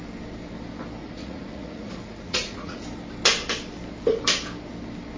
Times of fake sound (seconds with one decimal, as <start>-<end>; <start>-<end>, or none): 1.0-2.8